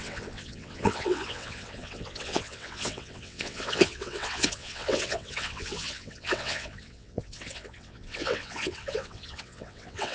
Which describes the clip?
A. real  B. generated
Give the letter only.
B